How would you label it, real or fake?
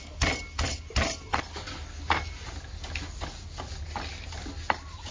real